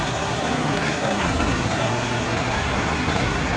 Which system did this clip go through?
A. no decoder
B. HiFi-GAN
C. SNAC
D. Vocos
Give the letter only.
C